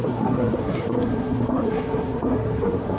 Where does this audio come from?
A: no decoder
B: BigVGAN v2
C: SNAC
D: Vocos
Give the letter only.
C